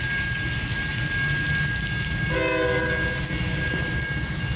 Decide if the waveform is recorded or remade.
recorded